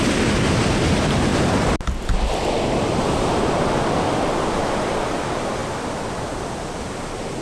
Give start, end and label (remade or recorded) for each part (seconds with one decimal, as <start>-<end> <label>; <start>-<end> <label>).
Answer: 0.0-1.3 recorded; 1.3-3.3 remade; 3.3-7.4 recorded